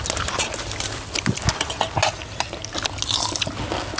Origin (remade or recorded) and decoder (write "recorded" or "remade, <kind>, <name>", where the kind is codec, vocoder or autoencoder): recorded